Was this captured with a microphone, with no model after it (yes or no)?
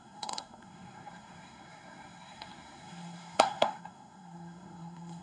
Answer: no